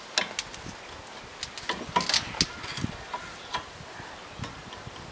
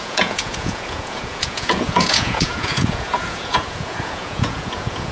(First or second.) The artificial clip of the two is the second